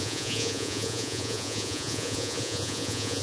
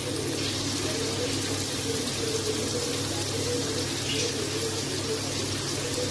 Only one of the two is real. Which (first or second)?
second